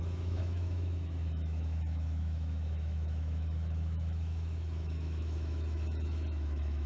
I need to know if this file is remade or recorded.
remade